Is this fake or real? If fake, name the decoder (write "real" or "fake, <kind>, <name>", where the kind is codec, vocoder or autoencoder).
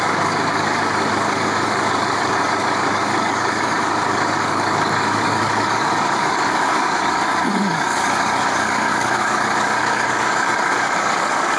fake, codec, DAC